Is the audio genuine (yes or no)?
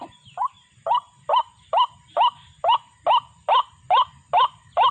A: yes